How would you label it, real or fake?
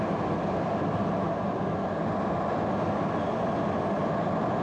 real